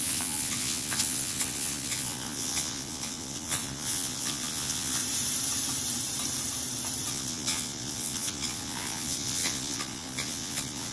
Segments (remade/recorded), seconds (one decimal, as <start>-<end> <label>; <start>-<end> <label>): 0.0-5.0 remade; 5.0-7.1 recorded; 7.1-10.9 remade